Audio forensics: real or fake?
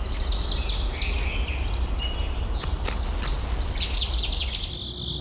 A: real